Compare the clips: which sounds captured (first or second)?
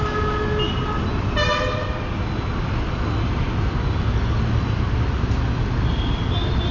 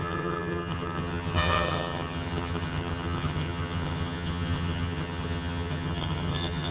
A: first